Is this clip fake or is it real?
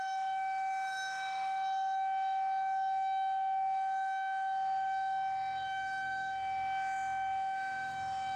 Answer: fake